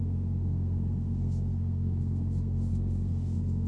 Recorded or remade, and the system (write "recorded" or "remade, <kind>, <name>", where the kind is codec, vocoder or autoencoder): remade, codec, SNAC